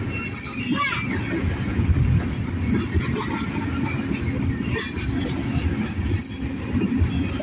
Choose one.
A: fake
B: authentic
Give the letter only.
B